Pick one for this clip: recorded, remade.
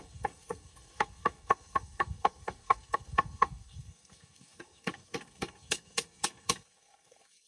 remade